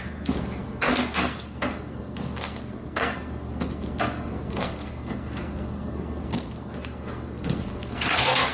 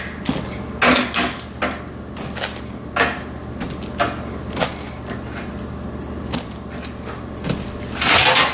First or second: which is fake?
first